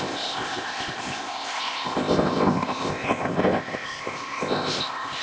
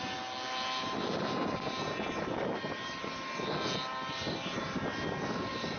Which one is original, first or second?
second